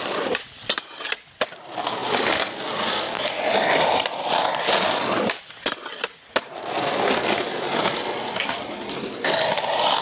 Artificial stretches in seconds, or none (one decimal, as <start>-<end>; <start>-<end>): none